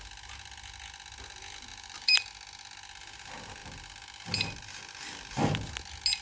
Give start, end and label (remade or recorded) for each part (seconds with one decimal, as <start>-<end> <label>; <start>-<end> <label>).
0.0-1.7 recorded; 1.7-2.3 remade; 2.3-6.2 recorded